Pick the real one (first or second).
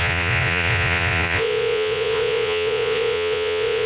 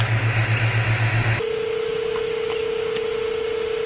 second